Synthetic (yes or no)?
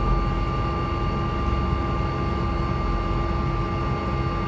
no